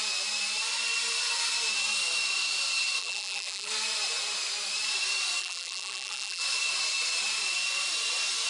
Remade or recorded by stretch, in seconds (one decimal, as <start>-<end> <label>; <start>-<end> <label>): 0.0-3.0 recorded; 3.0-3.7 remade; 3.7-5.4 recorded; 5.4-6.4 remade; 6.4-8.5 recorded